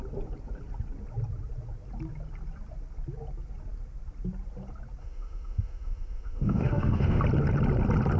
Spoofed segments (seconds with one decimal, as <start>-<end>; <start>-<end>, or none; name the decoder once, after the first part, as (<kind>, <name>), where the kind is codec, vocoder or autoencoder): 5.0-7.2 (autoencoder, DAC-VAE)